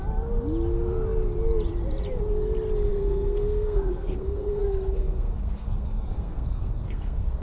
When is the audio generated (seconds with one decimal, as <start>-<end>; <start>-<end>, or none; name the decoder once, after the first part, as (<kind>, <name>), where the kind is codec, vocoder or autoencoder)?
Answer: 2.9-7.4 (codec, SNAC)